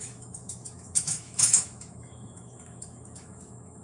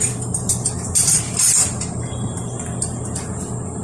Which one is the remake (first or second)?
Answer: first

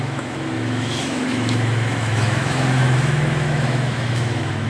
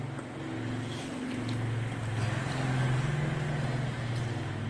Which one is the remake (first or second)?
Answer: first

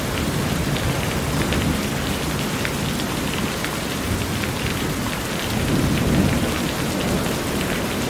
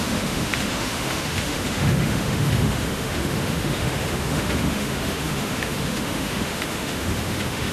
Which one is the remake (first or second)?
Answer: second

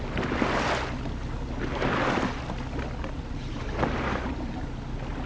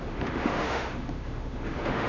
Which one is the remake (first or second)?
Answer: second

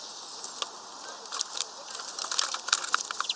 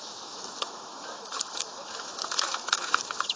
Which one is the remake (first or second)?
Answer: second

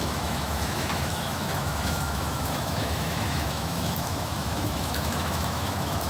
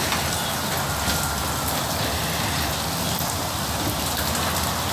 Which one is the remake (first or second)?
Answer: first